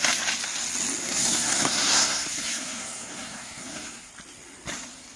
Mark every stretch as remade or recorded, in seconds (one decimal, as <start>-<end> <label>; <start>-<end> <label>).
0.0-1.0 recorded; 1.0-4.1 remade; 4.1-5.2 recorded